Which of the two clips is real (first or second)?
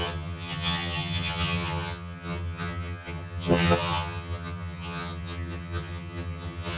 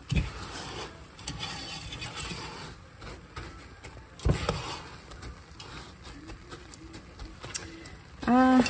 second